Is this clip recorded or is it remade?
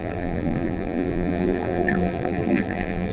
remade